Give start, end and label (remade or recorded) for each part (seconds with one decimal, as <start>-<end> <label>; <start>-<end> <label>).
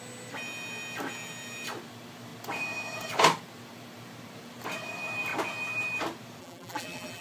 0.0-6.4 recorded; 6.4-7.2 remade